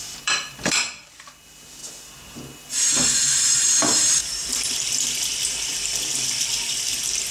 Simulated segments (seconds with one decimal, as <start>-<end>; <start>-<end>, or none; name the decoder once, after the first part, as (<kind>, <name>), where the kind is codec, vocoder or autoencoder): 0.0-1.8 (vocoder, BigVGAN v2); 2.7-7.3